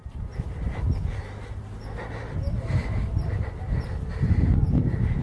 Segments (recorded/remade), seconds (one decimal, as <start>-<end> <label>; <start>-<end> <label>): 0.0-5.2 recorded